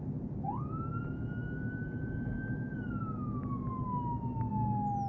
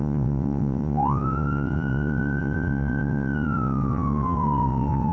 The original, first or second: first